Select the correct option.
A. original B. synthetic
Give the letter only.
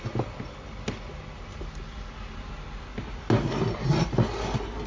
A